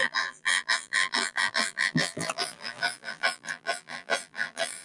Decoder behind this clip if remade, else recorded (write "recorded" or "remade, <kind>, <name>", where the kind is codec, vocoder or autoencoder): remade, vocoder, BigVGAN v2